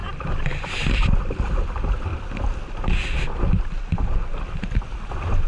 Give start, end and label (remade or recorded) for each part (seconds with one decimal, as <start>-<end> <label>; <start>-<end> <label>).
0.0-5.5 recorded